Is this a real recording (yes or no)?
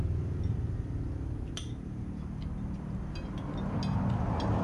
yes